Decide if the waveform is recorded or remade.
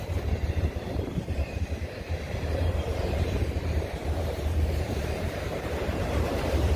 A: remade